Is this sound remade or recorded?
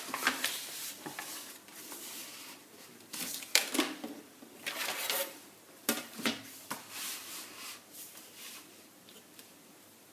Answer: remade